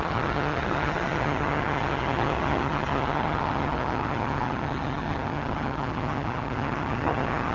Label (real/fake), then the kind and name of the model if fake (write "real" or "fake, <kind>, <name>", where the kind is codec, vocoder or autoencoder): fake, vocoder, HiFi-GAN